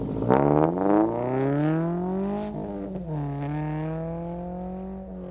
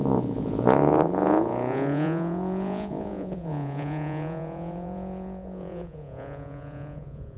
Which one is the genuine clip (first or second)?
first